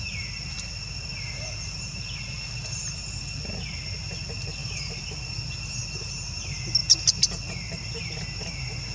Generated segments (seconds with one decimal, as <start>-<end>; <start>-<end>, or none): 4.6-5.4